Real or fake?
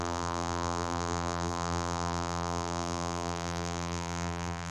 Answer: fake